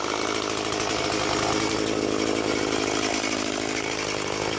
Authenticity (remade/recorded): recorded